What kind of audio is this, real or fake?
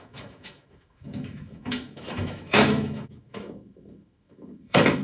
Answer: fake